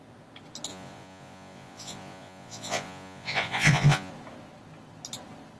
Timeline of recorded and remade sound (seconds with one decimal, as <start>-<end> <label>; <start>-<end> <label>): 0.0-0.7 recorded; 0.7-4.1 remade; 4.1-5.6 recorded